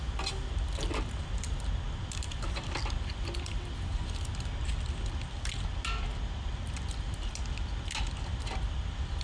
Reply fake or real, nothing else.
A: real